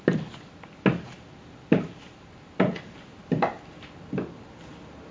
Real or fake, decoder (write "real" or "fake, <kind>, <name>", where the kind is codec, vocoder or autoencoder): real